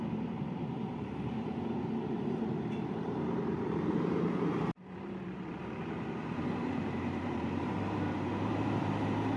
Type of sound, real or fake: fake